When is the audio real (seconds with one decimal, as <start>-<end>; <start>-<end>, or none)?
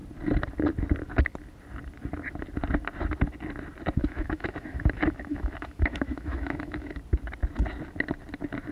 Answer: 0.0-4.0; 7.0-8.7